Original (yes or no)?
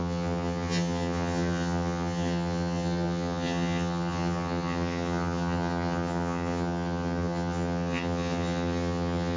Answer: no